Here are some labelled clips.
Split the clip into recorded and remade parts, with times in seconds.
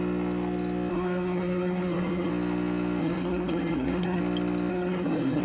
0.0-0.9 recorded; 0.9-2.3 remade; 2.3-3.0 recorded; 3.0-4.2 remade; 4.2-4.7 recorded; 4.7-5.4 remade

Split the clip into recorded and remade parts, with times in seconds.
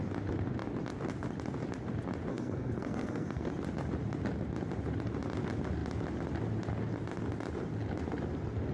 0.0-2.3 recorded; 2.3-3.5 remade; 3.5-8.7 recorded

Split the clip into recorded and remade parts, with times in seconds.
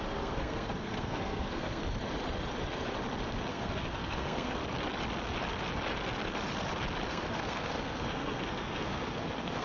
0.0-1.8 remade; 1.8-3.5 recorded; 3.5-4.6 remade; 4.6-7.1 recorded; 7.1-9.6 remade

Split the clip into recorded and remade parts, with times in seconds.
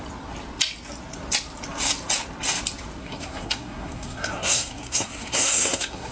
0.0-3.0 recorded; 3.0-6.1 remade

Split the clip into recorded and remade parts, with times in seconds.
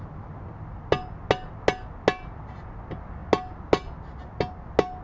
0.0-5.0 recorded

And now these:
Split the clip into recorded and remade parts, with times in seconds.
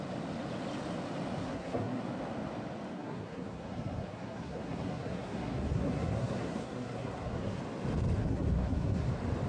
0.0-1.4 recorded; 1.4-2.0 remade; 2.0-2.9 recorded; 2.9-7.6 remade; 7.6-8.2 recorded; 8.2-9.1 remade; 9.1-9.5 recorded